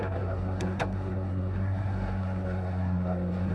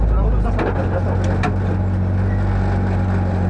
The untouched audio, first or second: second